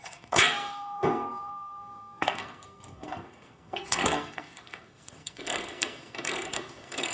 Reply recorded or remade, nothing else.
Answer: remade